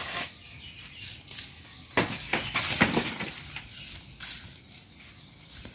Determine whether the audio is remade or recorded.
recorded